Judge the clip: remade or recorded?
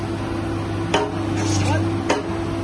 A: recorded